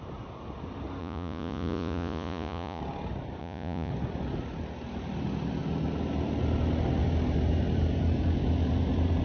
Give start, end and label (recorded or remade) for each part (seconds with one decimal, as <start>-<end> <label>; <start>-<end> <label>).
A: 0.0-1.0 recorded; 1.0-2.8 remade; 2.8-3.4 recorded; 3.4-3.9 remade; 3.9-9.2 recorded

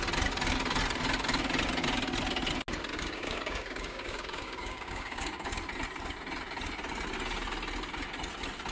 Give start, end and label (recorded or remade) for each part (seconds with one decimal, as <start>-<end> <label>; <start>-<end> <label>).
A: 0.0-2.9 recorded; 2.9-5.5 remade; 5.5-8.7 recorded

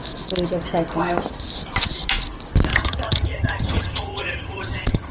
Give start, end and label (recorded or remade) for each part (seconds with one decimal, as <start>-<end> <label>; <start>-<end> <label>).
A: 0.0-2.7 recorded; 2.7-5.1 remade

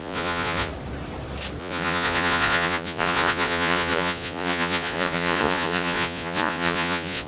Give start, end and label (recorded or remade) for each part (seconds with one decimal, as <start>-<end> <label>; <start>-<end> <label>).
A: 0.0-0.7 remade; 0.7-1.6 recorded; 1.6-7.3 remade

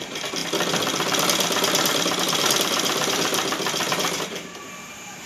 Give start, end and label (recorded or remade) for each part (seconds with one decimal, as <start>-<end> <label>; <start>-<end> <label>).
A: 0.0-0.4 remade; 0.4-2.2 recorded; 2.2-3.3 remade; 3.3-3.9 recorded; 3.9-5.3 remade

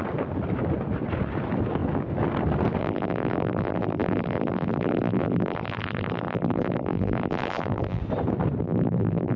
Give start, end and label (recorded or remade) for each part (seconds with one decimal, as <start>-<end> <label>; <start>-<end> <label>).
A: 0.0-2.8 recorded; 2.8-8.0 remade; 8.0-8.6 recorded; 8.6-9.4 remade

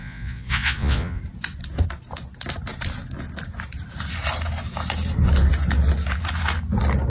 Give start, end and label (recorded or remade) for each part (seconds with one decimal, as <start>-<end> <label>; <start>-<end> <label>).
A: 0.0-1.2 remade; 1.2-7.1 recorded